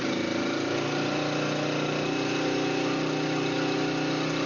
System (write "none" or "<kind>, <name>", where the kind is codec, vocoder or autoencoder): none